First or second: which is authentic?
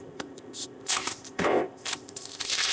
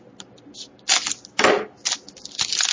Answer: second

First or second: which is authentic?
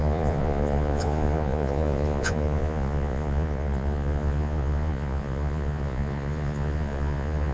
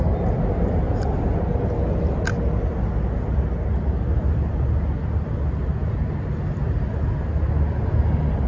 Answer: second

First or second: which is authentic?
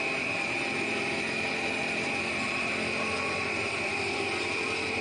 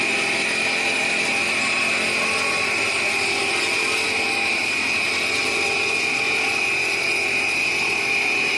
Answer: second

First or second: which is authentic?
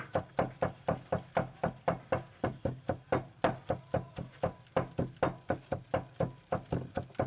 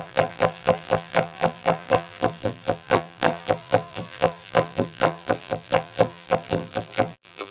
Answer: first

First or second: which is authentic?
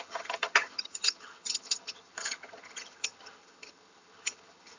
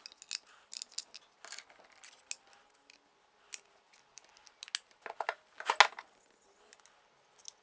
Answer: second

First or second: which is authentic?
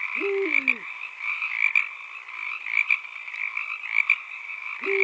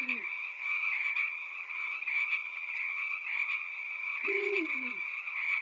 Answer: first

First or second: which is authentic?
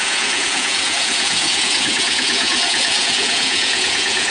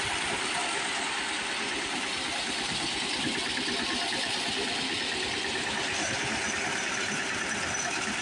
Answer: second